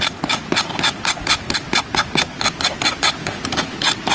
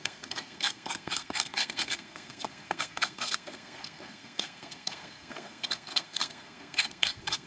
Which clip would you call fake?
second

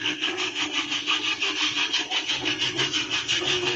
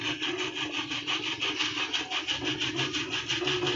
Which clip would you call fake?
first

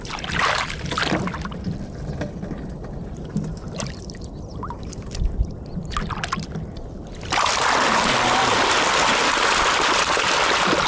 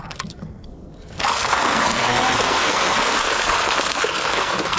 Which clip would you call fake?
second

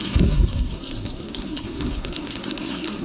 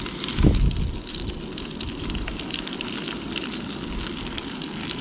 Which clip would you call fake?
first